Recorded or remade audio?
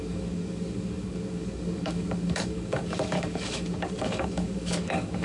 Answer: remade